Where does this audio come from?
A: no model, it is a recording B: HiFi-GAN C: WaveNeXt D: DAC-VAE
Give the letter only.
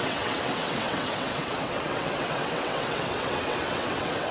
C